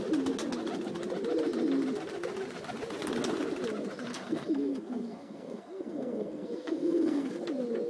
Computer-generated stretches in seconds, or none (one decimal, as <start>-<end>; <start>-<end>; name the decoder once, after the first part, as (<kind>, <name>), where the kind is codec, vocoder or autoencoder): 4.1-7.3 (codec, SNAC)